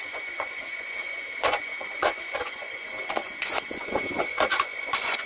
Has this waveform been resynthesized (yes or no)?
yes